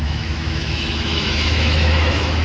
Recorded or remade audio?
remade